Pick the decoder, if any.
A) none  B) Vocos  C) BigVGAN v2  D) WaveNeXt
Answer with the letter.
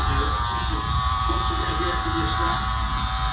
C